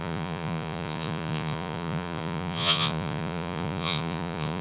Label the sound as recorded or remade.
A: remade